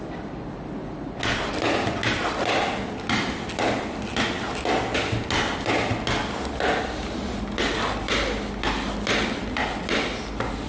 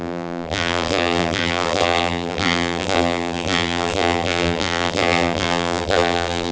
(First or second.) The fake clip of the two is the second